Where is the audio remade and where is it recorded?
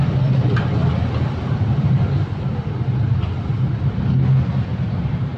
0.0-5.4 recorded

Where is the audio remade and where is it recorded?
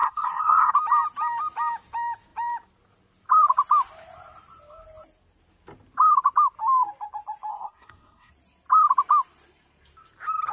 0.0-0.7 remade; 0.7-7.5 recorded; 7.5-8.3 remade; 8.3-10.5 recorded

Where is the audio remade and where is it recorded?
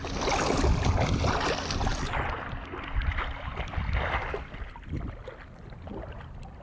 0.0-6.6 recorded